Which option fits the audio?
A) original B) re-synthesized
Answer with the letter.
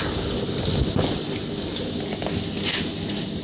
A